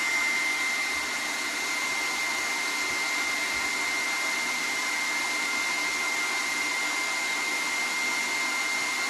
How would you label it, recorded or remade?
recorded